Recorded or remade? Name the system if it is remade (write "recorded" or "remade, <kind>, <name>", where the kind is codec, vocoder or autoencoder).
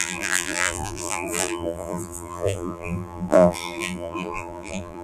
remade, vocoder, BigVGAN v2